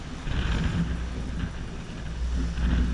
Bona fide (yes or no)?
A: yes